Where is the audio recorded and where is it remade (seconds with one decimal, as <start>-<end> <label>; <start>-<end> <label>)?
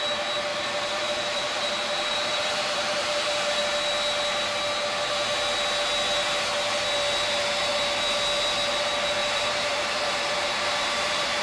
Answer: 0.0-0.5 recorded; 0.5-3.6 remade; 3.6-9.2 recorded; 9.2-11.4 remade